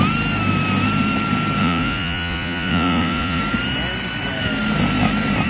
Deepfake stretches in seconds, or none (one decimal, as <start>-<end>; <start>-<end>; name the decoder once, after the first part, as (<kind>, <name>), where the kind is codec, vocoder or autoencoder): 1.6-3.4 (vocoder, Vocos)